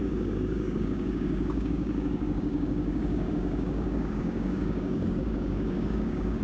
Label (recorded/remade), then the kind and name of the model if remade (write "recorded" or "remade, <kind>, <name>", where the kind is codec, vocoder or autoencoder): remade, codec, DAC